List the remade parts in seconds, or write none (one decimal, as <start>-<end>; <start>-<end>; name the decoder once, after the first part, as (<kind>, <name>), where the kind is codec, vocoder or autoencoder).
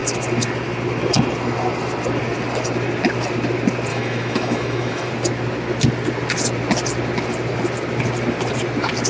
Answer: 3.9-5.1 (autoencoder, DAC-VAE)